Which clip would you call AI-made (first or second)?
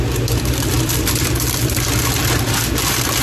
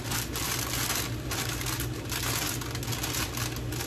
first